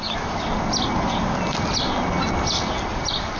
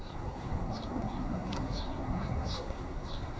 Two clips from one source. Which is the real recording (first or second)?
first